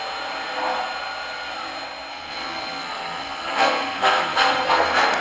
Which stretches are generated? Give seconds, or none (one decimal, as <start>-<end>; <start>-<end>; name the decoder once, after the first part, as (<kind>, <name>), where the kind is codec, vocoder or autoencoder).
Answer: 2.1-5.2 (codec, SNAC)